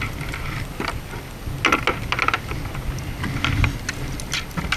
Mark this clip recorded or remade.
recorded